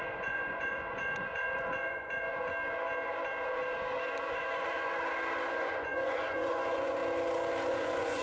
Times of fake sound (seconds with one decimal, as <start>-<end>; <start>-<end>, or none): 0.0-2.5; 4.3-4.9; 5.5-7.0; 7.7-8.2